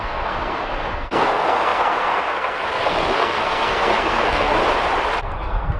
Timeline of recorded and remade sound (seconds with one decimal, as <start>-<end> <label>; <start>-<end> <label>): 0.0-4.6 remade; 4.6-5.2 recorded; 5.2-5.8 remade

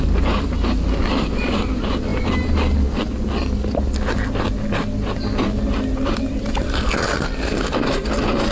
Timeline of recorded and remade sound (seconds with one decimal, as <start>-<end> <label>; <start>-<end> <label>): 0.0-8.5 recorded

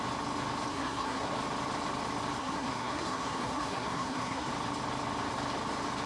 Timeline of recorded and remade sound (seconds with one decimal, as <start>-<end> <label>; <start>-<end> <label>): 0.0-0.7 recorded; 0.7-1.3 remade; 1.3-2.4 recorded; 2.4-4.5 remade; 4.5-6.1 recorded

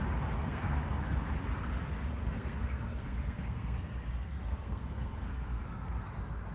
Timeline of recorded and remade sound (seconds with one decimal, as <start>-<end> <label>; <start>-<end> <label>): 0.0-0.4 recorded; 0.4-1.0 remade; 1.0-2.2 recorded; 2.2-6.1 remade; 6.1-6.5 recorded